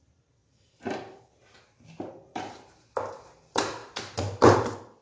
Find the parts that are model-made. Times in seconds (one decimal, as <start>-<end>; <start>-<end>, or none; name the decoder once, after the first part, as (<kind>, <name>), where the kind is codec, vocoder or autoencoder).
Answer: 0.4-1.2 (vocoder, BigVGAN v2); 2.3-3.1